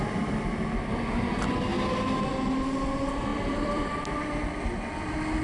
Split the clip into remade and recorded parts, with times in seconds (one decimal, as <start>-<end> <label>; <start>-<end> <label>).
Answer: 0.0-3.3 recorded; 3.3-3.9 remade; 3.9-5.4 recorded